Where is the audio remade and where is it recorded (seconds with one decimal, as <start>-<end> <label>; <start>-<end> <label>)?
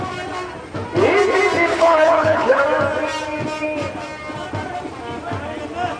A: 0.0-1.7 recorded; 1.7-2.6 remade; 2.6-6.0 recorded